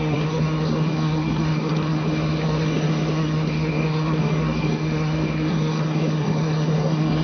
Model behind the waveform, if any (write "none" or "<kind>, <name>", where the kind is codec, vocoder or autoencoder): codec, SNAC